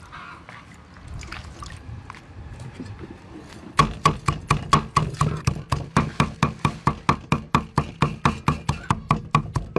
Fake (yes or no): no